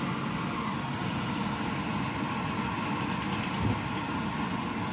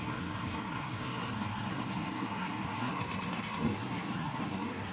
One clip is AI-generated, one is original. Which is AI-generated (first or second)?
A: second